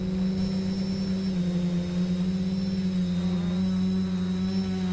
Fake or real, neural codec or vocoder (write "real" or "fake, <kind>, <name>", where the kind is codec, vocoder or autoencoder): real